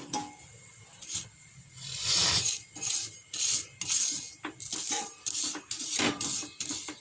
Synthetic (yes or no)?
no